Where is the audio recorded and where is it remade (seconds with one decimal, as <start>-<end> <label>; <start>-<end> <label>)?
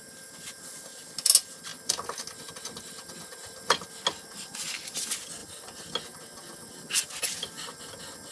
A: 0.0-8.3 recorded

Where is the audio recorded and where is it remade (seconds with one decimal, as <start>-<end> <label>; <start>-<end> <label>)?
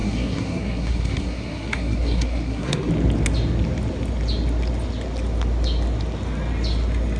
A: 0.0-2.9 remade; 2.9-7.2 recorded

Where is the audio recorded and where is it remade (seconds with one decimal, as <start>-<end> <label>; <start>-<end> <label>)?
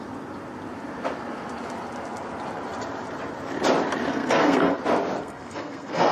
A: 0.0-4.1 recorded; 4.1-4.8 remade; 4.8-5.2 recorded; 5.2-6.1 remade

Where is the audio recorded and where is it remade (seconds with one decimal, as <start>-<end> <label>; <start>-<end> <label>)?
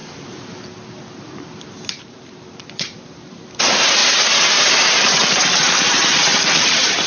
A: 0.0-1.9 recorded; 1.9-4.0 remade; 4.0-4.6 recorded; 4.6-6.3 remade; 6.3-7.1 recorded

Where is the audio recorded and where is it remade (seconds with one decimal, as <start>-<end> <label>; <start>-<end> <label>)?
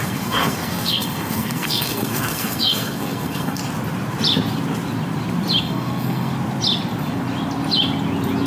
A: 0.0-3.6 remade; 3.6-5.6 recorded; 5.6-6.3 remade; 6.3-8.5 recorded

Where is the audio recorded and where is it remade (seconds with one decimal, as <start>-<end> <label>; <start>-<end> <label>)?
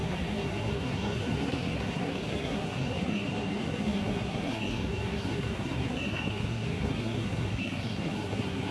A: 0.0-8.7 remade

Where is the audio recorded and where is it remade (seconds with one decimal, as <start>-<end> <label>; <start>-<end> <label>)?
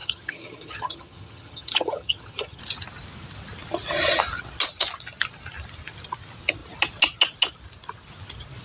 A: 0.0-2.6 remade; 2.6-8.6 recorded